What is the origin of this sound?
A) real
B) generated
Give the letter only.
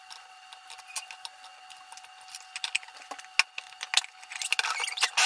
A